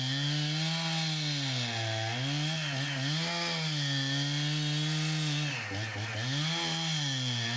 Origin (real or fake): real